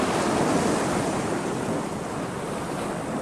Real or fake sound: real